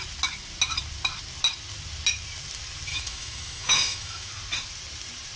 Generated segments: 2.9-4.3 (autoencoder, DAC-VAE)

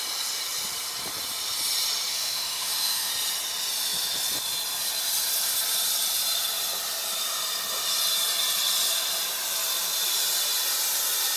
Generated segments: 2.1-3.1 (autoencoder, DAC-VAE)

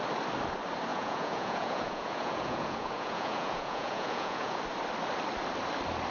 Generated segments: 0.9-4.6 (vocoder, Vocos)

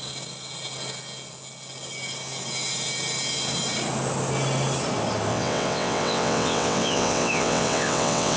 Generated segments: 5.3-8.4 (vocoder, WaveNeXt)

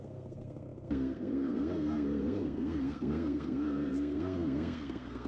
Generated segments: 0.0-5.3 (codec, SNAC)

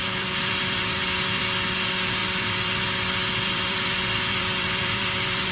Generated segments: 0.0-1.4 (vocoder, BigVGAN v2); 2.2-5.5

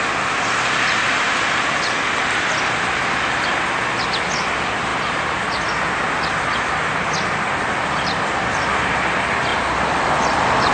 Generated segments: 4.9-5.6 (vocoder, BigVGAN v2)